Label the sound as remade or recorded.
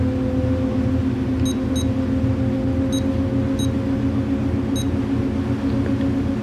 recorded